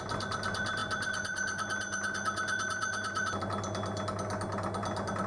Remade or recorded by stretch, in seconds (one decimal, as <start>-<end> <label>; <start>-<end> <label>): 0.0-0.8 recorded; 0.8-3.4 remade; 3.4-5.3 recorded

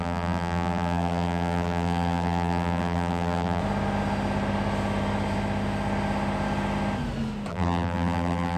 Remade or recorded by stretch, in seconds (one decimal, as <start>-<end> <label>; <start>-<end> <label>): 0.0-3.6 remade; 3.6-7.5 recorded; 7.5-8.6 remade